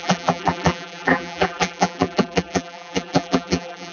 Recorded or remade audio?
remade